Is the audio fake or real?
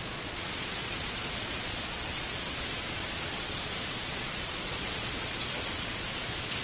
fake